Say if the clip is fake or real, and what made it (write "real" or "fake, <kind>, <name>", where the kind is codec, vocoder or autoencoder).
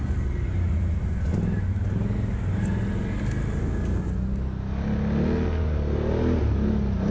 real